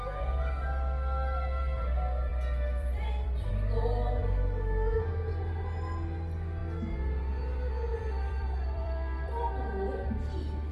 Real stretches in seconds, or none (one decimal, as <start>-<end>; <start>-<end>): 0.0-2.3; 3.5-7.9; 9.5-10.7